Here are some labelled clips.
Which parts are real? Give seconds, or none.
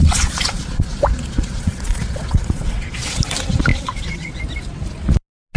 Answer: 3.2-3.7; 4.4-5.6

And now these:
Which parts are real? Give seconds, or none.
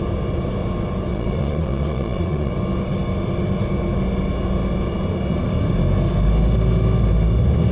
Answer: 0.0-1.1; 2.5-7.7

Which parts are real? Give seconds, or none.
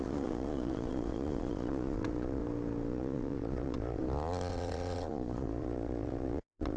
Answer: 2.4-2.9; 4.0-4.5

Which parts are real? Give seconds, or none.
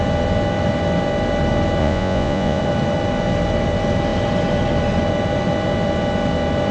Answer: 0.0-1.8; 2.6-6.7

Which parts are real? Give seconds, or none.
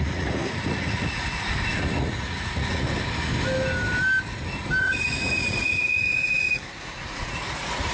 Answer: 2.9-4.8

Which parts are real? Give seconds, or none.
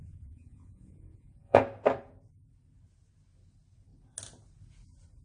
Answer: 1.6-5.2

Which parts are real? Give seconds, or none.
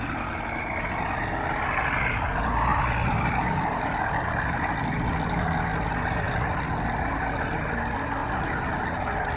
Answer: 0.0-9.4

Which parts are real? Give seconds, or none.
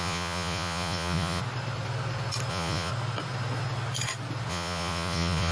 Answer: 1.4-2.5; 2.9-4.5